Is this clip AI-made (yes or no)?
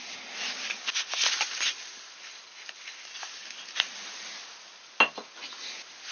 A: no